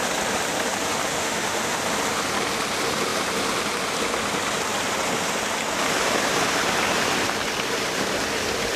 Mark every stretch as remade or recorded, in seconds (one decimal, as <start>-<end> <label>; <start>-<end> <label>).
0.0-1.1 recorded; 1.1-1.8 remade; 1.8-8.8 recorded

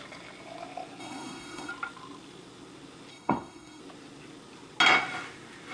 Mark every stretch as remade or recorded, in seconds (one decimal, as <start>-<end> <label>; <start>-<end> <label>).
0.0-1.0 recorded; 1.0-1.7 remade; 1.7-3.1 recorded; 3.1-3.8 remade; 3.8-5.7 recorded

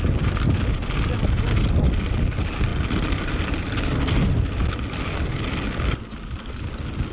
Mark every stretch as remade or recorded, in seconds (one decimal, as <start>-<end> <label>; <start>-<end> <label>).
0.0-7.1 recorded

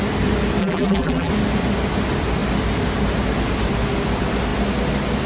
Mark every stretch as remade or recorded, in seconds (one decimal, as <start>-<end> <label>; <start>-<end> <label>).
0.0-0.6 recorded; 0.6-1.3 remade; 1.3-5.3 recorded

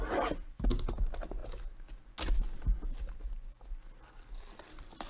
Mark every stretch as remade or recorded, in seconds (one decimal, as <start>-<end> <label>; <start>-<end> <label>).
0.0-1.4 remade; 1.4-3.7 recorded; 3.7-5.1 remade

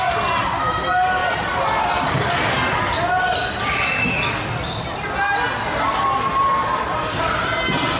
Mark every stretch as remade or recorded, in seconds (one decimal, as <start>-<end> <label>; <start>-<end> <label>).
0.0-8.0 recorded

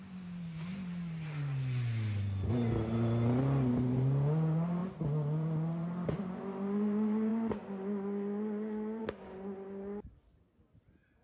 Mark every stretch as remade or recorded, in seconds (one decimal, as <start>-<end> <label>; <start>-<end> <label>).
0.0-11.2 recorded

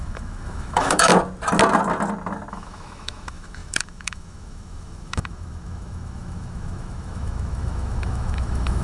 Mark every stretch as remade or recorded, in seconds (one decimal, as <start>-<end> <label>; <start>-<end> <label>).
0.0-1.1 remade; 1.1-2.5 recorded; 2.5-8.8 remade